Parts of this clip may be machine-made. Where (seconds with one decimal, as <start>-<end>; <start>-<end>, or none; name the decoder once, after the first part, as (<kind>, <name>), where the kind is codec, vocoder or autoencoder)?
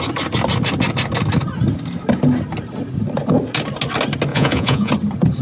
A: 4.3-4.9 (vocoder, Vocos)